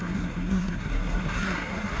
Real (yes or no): no